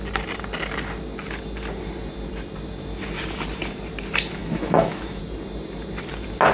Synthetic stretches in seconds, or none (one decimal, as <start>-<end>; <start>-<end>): 4.4-5.2